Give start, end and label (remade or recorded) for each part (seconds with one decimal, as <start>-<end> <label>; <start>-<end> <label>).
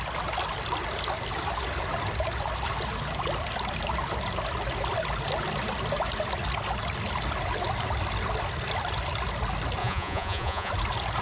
0.0-9.8 recorded; 9.8-10.7 remade; 10.7-11.2 recorded